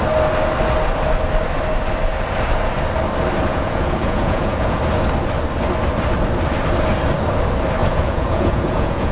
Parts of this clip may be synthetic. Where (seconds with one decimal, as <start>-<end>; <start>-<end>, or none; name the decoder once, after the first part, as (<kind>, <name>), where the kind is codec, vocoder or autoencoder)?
3.5-4.8 (vocoder, Vocos); 7.8-9.1